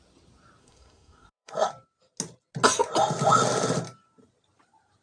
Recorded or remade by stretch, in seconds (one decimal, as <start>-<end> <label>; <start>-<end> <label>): 0.0-0.6 recorded; 0.6-1.7 remade; 1.7-5.0 recorded